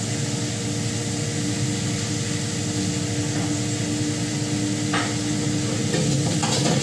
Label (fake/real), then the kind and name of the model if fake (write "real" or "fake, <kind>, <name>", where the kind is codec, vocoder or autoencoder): real